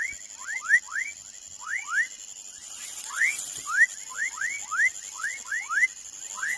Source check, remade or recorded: recorded